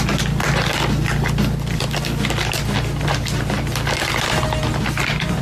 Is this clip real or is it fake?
real